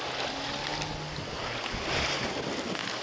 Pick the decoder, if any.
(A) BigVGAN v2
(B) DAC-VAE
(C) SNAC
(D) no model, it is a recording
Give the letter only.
D